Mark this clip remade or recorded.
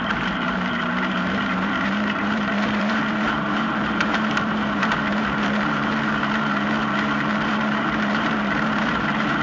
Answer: remade